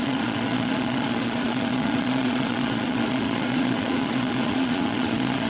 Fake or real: fake